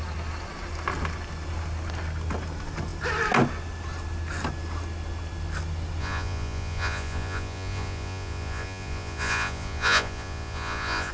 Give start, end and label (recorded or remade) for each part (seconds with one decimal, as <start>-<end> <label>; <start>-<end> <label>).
0.0-6.0 recorded; 6.0-11.1 remade